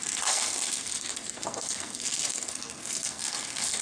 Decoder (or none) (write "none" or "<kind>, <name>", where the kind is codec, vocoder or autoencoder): codec, SNAC